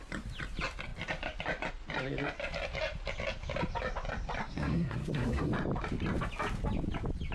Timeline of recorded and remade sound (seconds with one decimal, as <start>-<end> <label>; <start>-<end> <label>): 0.0-4.4 recorded; 4.4-5.5 remade; 5.5-7.3 recorded